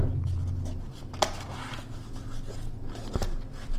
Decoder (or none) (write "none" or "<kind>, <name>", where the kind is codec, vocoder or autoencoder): none